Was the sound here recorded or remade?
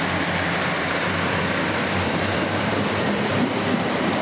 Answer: remade